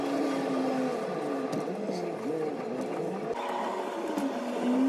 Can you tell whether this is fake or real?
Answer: real